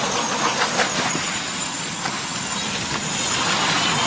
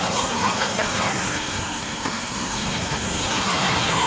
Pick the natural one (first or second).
first